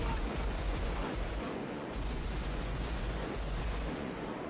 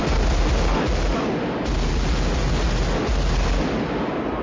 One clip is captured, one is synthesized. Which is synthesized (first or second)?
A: first